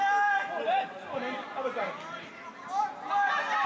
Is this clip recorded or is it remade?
recorded